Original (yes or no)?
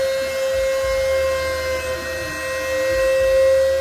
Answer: yes